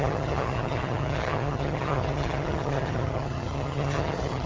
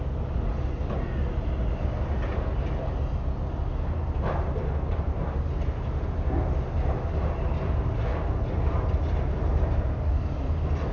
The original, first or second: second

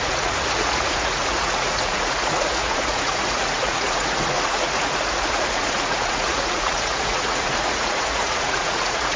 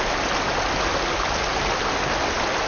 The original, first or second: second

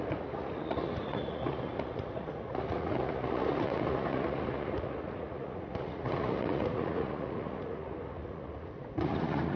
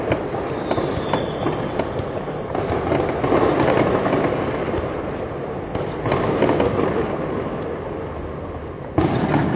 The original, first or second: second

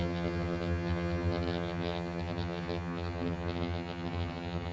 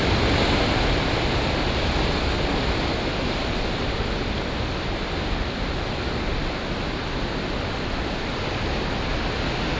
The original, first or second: second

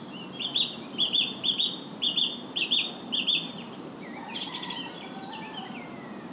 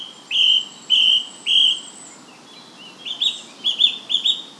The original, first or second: second